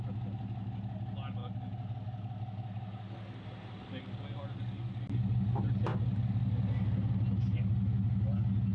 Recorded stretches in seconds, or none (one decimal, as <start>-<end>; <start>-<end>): 0.0-8.7